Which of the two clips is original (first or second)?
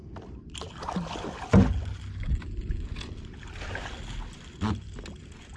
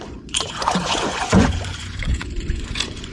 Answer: first